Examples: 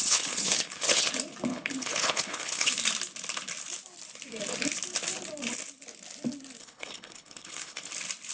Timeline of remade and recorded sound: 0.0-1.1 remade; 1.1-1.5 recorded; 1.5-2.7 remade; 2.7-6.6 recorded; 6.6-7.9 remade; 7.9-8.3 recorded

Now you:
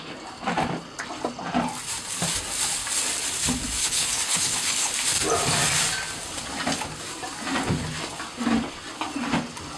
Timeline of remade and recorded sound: 0.0-3.8 recorded; 3.8-4.9 remade; 4.9-9.8 recorded

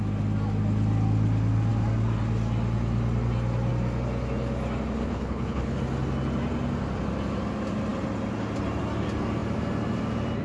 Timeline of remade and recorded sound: 0.0-5.0 recorded; 5.0-5.8 remade; 5.8-10.4 recorded

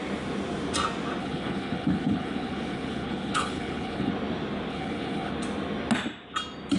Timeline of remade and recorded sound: 0.0-1.2 recorded; 1.2-4.1 remade; 4.1-4.7 recorded; 4.7-5.3 remade; 5.3-6.8 recorded

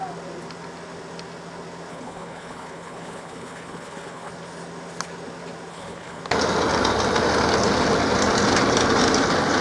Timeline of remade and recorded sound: 0.0-1.9 recorded; 1.9-4.3 remade; 4.3-5.7 recorded; 5.7-6.2 remade; 6.2-9.6 recorded

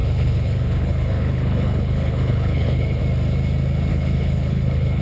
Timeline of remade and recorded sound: 0.0-3.0 remade; 3.0-3.9 recorded; 3.9-5.0 remade

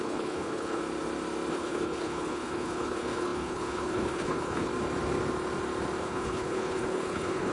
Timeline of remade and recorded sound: 0.0-0.8 remade; 0.8-1.5 recorded; 1.5-4.7 remade; 4.7-6.0 recorded; 6.0-7.5 remade